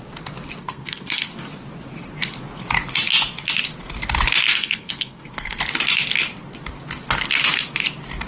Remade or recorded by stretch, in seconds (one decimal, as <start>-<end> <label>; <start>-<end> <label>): 0.0-0.6 recorded; 0.6-1.3 remade; 1.3-4.5 recorded; 4.5-5.6 remade; 5.6-8.3 recorded